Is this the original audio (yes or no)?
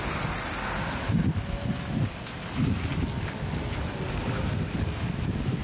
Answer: yes